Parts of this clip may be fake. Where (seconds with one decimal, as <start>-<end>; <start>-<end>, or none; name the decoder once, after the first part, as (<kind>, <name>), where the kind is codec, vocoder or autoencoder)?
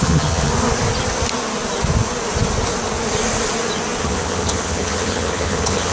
0.0-0.5 (vocoder, HiFi-GAN); 4.0-5.9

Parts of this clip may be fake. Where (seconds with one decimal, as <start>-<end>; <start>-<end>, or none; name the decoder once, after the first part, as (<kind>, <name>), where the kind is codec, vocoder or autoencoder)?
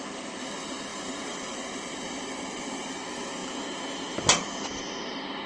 0.9-1.6 (vocoder, BigVGAN v2)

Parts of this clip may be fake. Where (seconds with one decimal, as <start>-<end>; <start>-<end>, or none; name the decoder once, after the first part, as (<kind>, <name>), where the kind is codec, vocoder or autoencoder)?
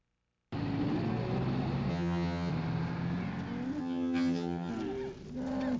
1.9-2.5 (vocoder, HiFi-GAN); 3.8-4.7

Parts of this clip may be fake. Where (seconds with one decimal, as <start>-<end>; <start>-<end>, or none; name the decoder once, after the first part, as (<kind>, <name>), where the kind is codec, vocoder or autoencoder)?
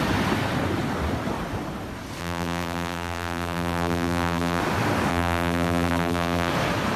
2.2-4.6 (vocoder, BigVGAN v2); 5.1-6.5